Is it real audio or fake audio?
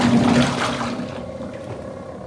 real